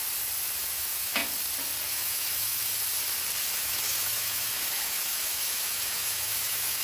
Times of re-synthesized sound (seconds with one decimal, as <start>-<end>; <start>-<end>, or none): 0.6-1.2; 1.9-2.7; 3.5-6.8